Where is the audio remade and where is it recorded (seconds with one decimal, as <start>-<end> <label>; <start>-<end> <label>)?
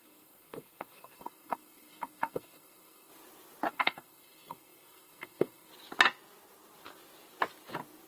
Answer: 0.0-3.1 remade; 3.1-3.7 recorded; 3.7-5.7 remade; 5.7-8.1 recorded